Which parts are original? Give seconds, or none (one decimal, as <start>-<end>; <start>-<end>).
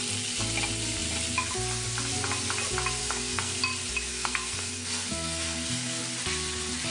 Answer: 0.0-3.0; 3.6-4.1; 6.0-6.9